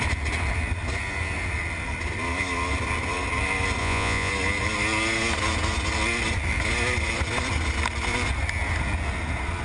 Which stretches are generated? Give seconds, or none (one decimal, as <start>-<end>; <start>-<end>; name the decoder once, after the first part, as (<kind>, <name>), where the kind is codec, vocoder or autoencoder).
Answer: 3.8-4.3 (vocoder, Vocos)